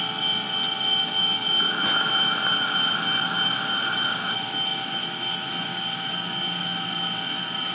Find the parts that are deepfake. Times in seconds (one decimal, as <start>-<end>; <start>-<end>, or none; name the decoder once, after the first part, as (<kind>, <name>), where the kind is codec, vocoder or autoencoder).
none